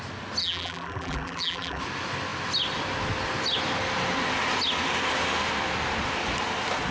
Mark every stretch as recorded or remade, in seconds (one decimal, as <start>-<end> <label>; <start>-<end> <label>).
0.0-0.4 recorded; 0.4-1.8 remade; 1.8-6.9 recorded